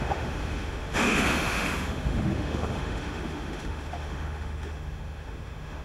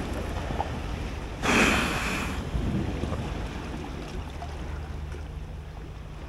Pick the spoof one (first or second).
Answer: first